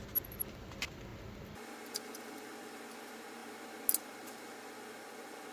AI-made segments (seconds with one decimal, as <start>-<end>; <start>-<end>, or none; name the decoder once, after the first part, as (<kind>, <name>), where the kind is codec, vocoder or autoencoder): none